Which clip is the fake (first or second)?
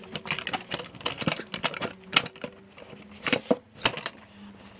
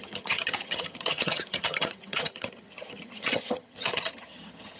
second